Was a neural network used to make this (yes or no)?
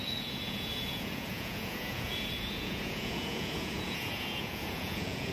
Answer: yes